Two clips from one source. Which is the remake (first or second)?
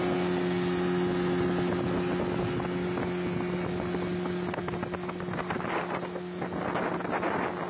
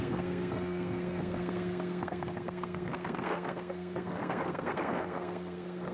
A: second